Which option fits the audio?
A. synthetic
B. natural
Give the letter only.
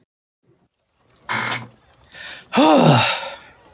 B